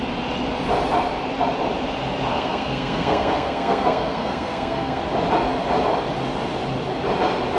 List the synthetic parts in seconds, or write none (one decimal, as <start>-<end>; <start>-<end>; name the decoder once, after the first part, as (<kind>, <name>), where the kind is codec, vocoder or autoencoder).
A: 2.3-5.0 (codec, SNAC)